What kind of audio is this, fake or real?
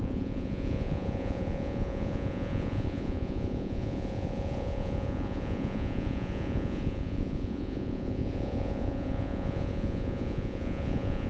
fake